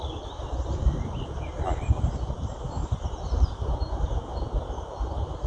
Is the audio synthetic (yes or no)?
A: yes